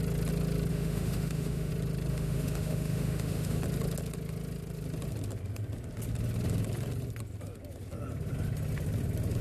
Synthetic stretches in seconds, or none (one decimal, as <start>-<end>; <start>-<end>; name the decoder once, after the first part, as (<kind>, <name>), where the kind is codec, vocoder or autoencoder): 0.7-1.7 (autoencoder, DAC-VAE); 2.1-3.6